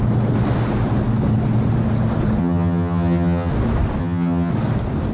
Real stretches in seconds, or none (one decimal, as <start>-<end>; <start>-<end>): 0.0-2.4; 3.5-4.0; 4.5-5.1